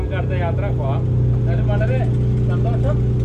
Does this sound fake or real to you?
real